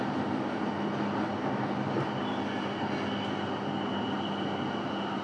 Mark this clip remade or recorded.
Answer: recorded